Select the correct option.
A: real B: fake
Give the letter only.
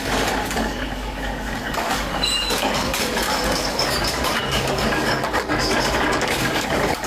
B